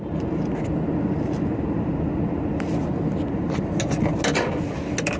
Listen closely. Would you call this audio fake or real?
real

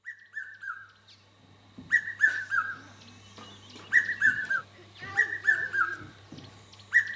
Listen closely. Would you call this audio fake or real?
real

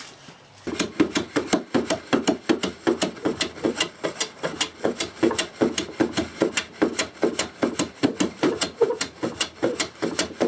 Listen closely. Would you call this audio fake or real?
real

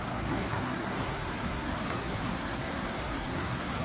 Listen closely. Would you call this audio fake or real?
fake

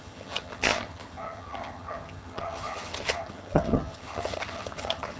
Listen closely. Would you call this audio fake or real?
fake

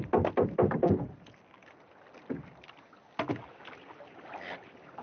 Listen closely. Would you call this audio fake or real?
real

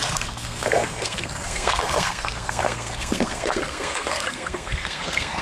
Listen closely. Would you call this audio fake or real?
fake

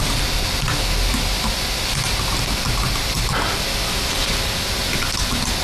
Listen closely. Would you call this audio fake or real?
real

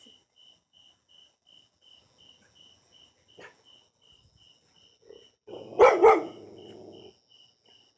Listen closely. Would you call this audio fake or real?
real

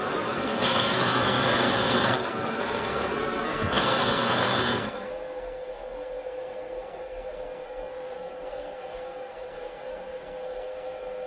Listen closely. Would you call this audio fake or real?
fake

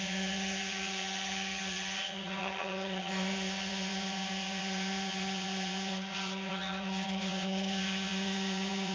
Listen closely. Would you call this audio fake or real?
fake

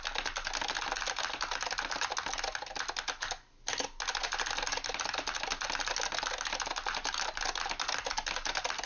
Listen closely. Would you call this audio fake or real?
real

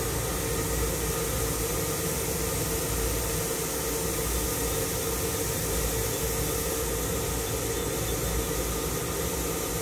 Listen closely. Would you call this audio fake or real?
real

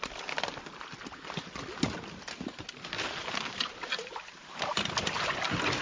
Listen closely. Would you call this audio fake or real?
real